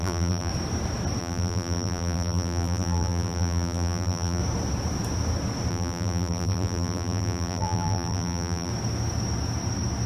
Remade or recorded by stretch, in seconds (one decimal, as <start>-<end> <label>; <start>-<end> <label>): 0.0-0.5 remade; 0.5-1.2 recorded; 1.2-4.4 remade; 4.4-5.7 recorded; 5.7-8.7 remade; 8.7-10.1 recorded